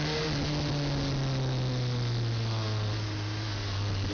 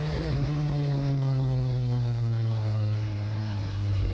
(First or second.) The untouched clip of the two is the first